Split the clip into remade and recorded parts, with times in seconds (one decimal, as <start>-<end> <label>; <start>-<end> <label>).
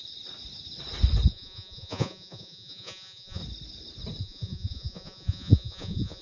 0.0-1.3 recorded; 1.3-3.4 remade; 3.4-4.2 recorded; 4.2-6.2 remade